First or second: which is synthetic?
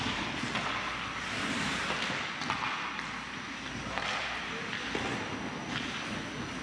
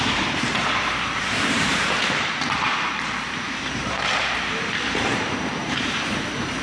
second